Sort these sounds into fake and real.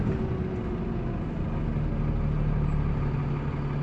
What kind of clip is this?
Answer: real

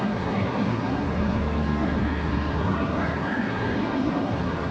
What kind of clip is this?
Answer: fake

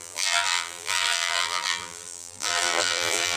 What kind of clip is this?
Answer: fake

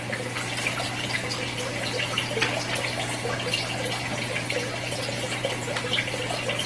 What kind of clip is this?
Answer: real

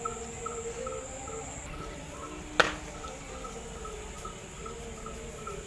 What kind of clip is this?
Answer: real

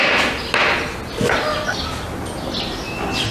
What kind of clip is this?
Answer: real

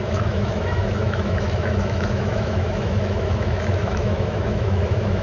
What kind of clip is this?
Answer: fake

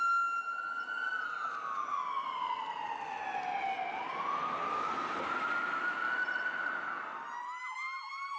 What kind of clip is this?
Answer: real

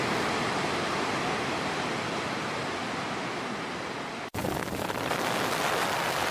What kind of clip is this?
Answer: real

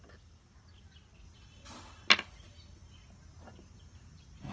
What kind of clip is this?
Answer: real